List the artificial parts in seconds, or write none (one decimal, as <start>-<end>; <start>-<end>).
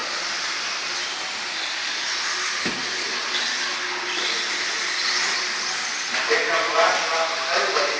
none